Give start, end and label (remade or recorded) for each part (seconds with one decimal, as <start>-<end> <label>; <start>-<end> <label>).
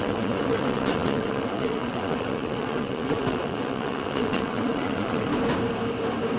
0.0-5.3 remade; 5.3-6.4 recorded